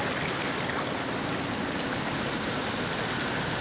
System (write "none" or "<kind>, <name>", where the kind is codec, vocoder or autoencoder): none